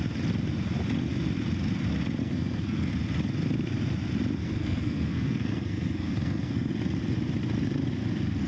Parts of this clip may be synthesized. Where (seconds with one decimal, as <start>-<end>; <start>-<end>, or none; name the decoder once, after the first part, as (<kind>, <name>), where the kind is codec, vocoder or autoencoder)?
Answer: 2.2-2.9 (codec, SNAC); 4.4-6.7